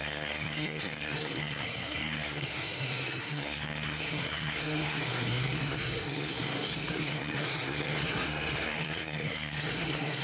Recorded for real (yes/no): no